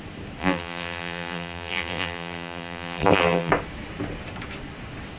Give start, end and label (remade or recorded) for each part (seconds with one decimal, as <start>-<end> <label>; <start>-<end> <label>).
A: 0.0-0.4 recorded; 0.4-3.5 remade; 3.5-5.2 recorded